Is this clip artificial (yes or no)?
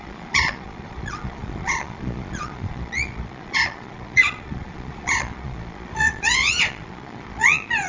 yes